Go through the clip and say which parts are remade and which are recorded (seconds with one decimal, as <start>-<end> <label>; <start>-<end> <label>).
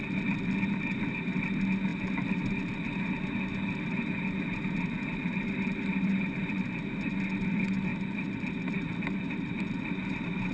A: 0.0-10.5 recorded